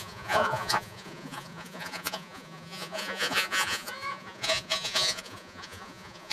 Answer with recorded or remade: remade